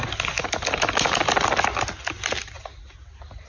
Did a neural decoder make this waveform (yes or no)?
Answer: no